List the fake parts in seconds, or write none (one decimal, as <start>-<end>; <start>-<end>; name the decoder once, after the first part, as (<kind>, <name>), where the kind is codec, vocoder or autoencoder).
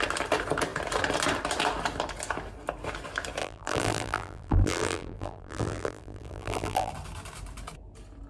3.4-6.9 (vocoder, BigVGAN v2)